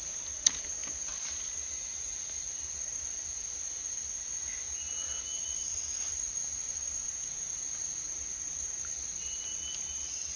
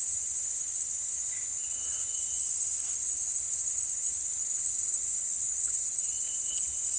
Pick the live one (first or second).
first